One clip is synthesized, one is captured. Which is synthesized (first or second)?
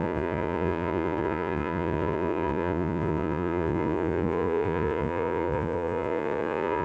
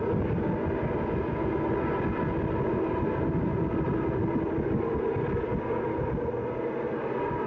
first